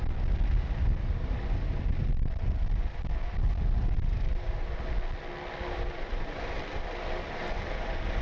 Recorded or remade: recorded